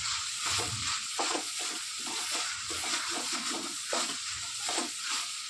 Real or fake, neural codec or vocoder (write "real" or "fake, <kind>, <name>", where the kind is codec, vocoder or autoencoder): fake, vocoder, Vocos